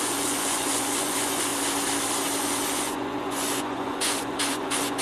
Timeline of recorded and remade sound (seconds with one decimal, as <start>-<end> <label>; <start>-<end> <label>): 0.0-1.5 remade; 1.5-2.4 recorded; 2.4-5.0 remade

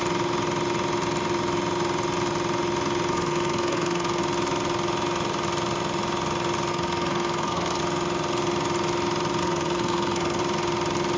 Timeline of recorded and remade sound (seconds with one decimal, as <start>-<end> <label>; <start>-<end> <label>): 0.0-3.1 recorded; 3.1-4.2 remade; 4.2-6.7 recorded; 6.7-7.8 remade; 7.8-9.4 recorded; 9.4-10.4 remade; 10.4-11.2 recorded